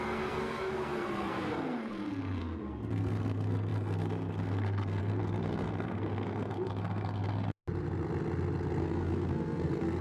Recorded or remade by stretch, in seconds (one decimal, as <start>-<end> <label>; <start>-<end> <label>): 0.0-7.6 remade; 7.6-8.8 recorded; 8.8-10.0 remade